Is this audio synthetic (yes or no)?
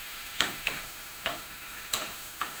yes